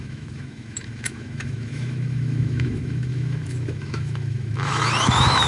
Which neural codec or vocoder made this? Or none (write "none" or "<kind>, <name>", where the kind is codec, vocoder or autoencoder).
autoencoder, DAC-VAE